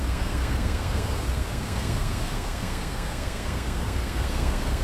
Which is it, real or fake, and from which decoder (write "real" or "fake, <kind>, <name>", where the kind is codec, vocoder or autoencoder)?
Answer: fake, codec, SNAC